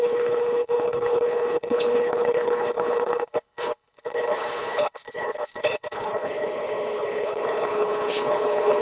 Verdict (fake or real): fake